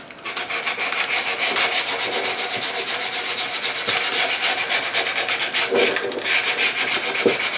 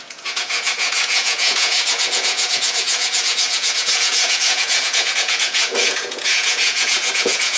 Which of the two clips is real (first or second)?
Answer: first